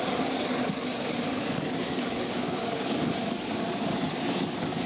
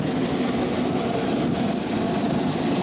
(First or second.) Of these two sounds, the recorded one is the second